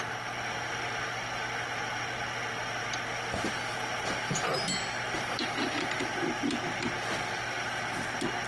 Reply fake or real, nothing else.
real